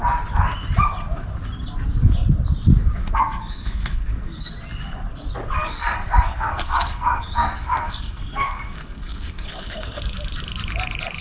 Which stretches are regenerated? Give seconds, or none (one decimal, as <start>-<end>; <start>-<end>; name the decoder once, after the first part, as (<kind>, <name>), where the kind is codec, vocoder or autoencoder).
3.0-4.5 (codec, SNAC); 5.6-10.0